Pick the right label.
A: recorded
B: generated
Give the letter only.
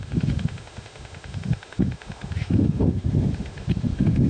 B